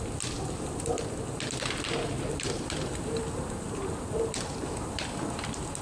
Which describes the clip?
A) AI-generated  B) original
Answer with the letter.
A